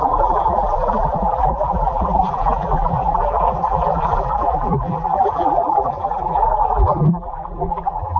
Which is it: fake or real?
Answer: fake